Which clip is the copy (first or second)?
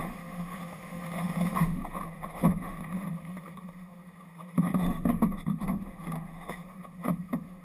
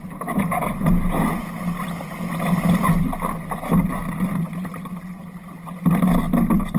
first